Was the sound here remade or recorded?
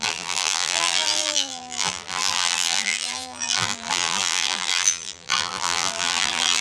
remade